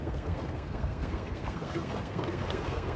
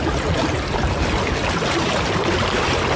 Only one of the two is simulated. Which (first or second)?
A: first